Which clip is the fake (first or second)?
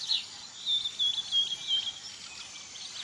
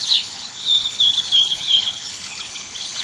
second